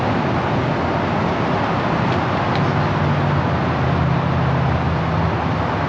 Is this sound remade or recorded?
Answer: recorded